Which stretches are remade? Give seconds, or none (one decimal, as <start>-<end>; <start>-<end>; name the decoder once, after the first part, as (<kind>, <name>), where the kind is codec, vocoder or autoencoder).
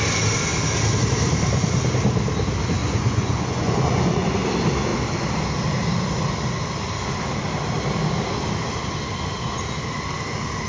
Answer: 2.8-4.3 (vocoder, Vocos)